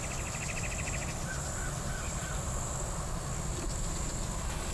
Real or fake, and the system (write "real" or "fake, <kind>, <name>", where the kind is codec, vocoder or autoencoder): real